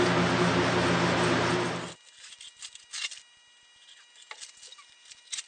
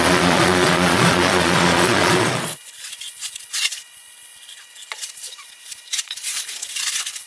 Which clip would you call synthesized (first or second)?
second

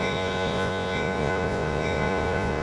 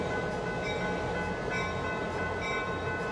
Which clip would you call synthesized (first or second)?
first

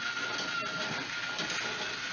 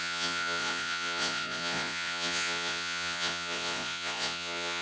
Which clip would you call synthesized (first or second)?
second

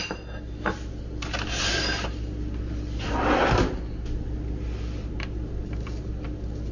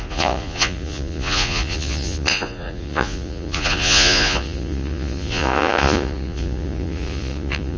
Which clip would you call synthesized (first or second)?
second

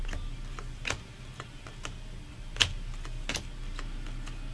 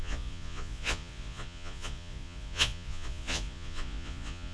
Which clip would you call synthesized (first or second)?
second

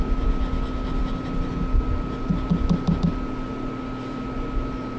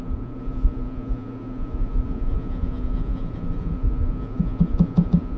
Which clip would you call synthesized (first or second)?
second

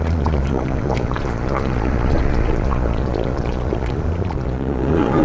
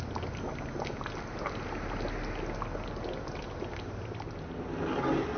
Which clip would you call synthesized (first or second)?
first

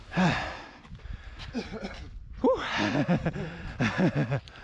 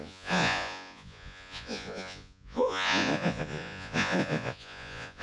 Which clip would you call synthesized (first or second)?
second